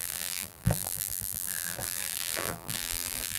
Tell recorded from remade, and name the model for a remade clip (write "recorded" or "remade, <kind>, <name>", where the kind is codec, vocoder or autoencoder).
remade, vocoder, BigVGAN v2